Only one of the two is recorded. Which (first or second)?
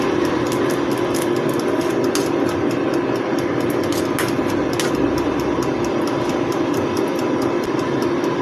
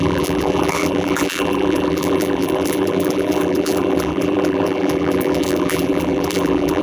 first